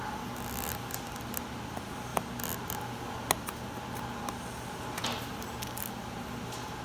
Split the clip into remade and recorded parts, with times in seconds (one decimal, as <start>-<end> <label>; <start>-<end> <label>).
0.0-6.8 recorded

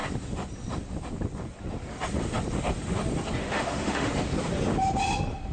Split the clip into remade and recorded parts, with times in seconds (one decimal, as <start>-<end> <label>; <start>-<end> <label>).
0.0-3.4 recorded; 3.4-4.1 remade; 4.1-5.5 recorded

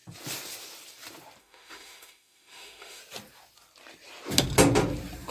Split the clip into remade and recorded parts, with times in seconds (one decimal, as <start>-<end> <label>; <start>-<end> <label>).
0.0-1.4 recorded; 1.4-3.0 remade; 3.0-5.3 recorded

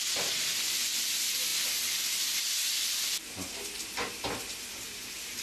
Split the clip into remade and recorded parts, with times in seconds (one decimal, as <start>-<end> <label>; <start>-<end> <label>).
0.0-5.4 recorded

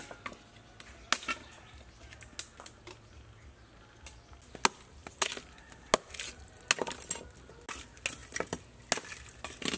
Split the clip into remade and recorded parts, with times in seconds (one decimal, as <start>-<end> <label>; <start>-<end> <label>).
0.0-9.8 recorded